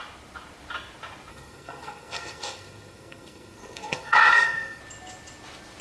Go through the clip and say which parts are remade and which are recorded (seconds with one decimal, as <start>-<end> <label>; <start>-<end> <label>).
0.0-1.3 recorded; 1.3-4.8 remade; 4.8-5.8 recorded